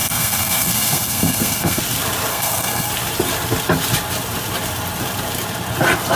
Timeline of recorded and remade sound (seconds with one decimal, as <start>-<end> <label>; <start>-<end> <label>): 0.0-1.8 remade; 1.8-2.3 recorded; 2.3-2.9 remade; 2.9-6.2 recorded